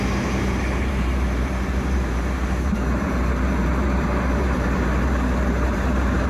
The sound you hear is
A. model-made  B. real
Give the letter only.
A